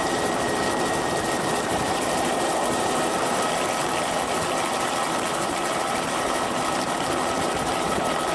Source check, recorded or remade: remade